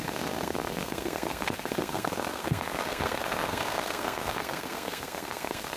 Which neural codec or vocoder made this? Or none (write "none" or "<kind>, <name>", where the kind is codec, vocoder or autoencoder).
codec, SNAC